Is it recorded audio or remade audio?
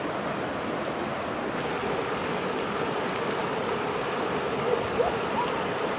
recorded